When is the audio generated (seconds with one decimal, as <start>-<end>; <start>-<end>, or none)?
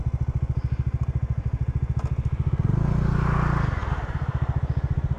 3.8-4.3